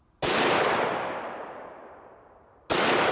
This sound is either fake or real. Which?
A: real